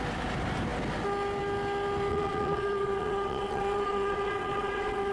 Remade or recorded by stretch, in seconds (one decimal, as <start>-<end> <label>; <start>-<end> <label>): 0.0-2.1 recorded; 2.1-5.1 remade